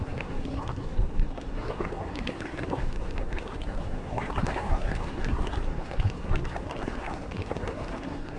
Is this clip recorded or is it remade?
remade